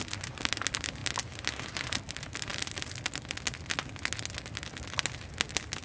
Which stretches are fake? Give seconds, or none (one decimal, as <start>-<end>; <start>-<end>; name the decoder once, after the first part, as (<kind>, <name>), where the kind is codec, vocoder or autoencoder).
none